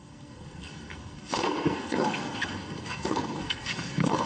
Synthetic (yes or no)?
yes